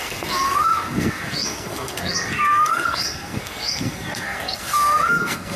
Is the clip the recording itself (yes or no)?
no